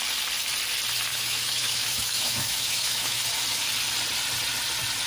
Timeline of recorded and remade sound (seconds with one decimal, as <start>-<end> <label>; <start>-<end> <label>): 0.0-1.1 recorded; 1.1-3.2 remade; 3.2-5.1 recorded